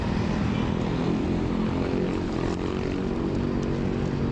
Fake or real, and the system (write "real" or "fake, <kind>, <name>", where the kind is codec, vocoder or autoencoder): real